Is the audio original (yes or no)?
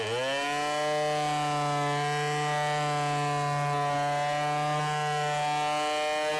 yes